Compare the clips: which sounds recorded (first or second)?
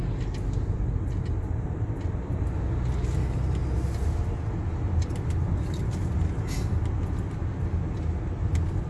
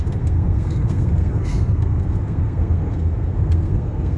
first